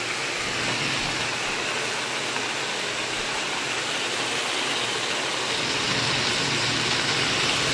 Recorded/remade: recorded